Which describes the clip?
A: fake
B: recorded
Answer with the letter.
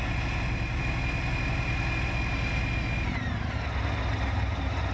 B